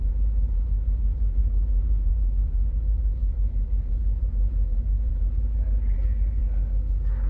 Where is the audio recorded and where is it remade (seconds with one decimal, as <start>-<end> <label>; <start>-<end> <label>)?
0.0-6.4 remade; 6.4-7.3 recorded

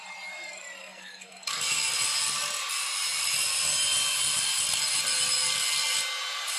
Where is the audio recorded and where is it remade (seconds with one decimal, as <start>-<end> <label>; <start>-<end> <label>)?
0.0-0.8 recorded; 0.8-1.6 remade; 1.6-6.6 recorded

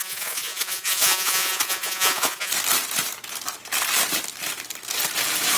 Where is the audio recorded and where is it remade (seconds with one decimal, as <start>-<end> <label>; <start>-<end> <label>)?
0.0-2.5 remade; 2.5-5.6 recorded

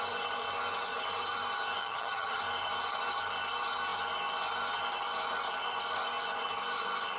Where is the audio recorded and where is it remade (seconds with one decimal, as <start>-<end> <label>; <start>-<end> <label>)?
0.0-1.8 recorded; 1.8-2.4 remade; 2.4-7.2 recorded

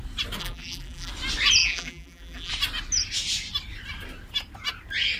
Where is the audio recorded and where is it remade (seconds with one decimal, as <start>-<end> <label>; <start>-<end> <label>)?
0.0-0.4 recorded; 0.4-1.1 remade; 1.1-1.6 recorded; 1.6-2.5 remade; 2.5-5.2 recorded

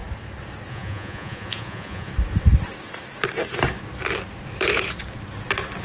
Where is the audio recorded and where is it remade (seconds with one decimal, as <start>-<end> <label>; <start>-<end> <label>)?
0.0-0.7 recorded; 0.7-2.1 remade; 2.1-5.8 recorded

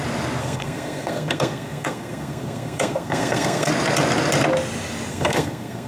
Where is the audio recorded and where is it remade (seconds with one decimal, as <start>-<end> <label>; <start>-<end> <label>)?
0.0-0.4 recorded; 0.4-3.7 remade; 3.7-5.1 recorded; 5.1-5.9 remade